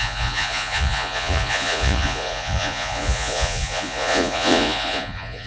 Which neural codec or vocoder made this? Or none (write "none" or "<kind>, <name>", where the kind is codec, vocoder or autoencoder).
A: vocoder, Vocos